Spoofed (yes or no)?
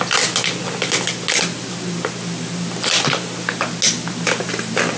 no